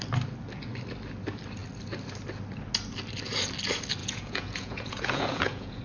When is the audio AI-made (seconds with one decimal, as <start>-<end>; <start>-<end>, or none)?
4.0-5.8